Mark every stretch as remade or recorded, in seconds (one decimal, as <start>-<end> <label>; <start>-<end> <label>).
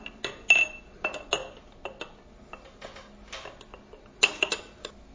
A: 0.0-5.1 recorded